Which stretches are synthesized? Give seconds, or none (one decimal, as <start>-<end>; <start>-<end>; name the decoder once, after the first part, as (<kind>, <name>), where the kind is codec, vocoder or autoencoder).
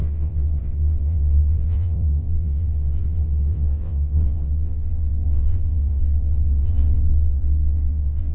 0.0-8.3 (vocoder, WaveNeXt)